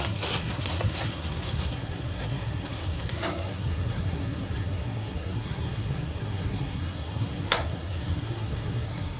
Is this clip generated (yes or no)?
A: yes